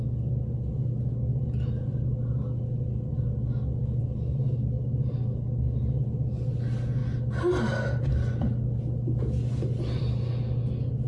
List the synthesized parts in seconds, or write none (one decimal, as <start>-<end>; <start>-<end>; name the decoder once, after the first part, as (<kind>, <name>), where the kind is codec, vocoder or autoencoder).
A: none